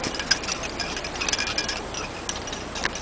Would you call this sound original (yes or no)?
yes